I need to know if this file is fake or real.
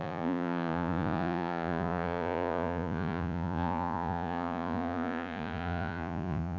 fake